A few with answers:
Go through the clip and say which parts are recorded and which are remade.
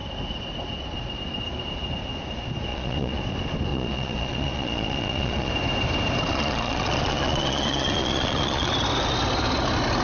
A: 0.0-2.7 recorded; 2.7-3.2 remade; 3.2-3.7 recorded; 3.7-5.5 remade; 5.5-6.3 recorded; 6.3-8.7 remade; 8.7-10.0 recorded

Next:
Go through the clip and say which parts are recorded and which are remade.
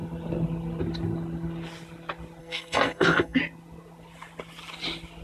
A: 0.0-2.4 recorded; 2.4-3.4 remade; 3.4-5.2 recorded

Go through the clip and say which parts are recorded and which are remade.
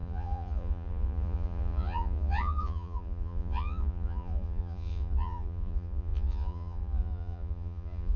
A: 0.0-8.2 remade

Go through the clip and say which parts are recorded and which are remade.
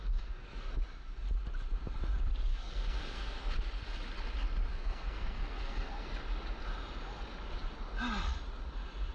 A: 0.0-0.7 remade; 0.7-2.5 recorded; 2.5-3.5 remade; 3.5-4.7 recorded; 4.7-6.1 remade; 6.1-9.1 recorded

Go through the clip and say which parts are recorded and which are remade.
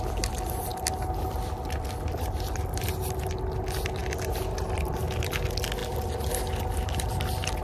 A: 0.0-4.0 recorded; 4.0-5.2 remade; 5.2-7.6 recorded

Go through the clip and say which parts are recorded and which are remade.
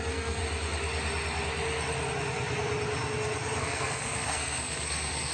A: 0.0-0.4 remade; 0.4-3.6 recorded; 3.6-5.3 remade